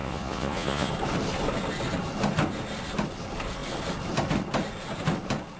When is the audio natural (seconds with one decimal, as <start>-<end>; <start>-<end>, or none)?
0.9-5.6

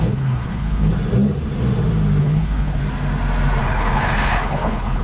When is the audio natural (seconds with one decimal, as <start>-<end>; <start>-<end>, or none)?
0.9-2.2; 2.8-3.6